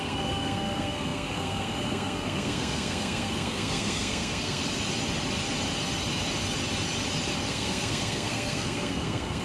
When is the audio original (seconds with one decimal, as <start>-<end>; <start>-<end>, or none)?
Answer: 4.6-7.5